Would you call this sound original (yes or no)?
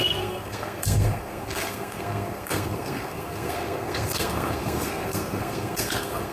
no